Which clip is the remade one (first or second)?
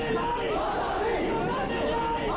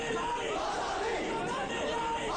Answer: second